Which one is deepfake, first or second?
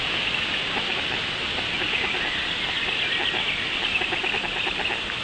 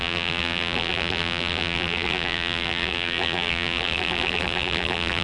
second